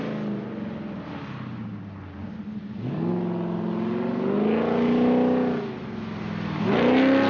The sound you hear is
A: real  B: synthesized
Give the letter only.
A